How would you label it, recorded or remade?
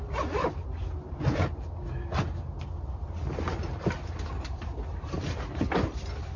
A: recorded